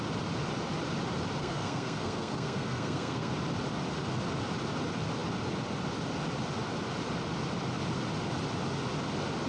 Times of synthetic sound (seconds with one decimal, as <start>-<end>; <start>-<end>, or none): 1.4-3.3